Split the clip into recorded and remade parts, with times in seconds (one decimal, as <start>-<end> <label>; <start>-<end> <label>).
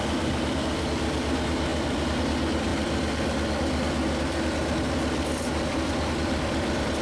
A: 0.0-7.0 remade